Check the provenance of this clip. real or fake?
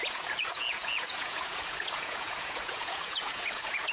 fake